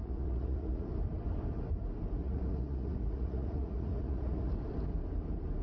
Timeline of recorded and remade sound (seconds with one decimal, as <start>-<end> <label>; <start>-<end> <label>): 0.0-0.9 remade; 0.9-2.2 recorded; 2.2-4.5 remade; 4.5-5.6 recorded